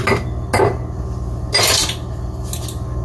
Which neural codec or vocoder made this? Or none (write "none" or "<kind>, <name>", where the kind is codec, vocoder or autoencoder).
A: none